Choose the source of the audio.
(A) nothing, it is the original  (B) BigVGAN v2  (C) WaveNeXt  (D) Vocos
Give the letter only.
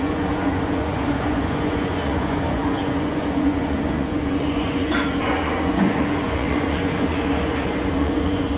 D